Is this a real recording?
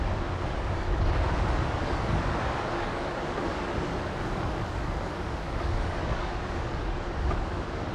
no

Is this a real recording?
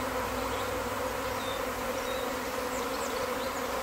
yes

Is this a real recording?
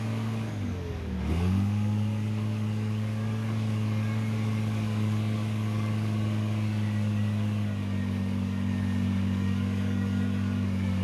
no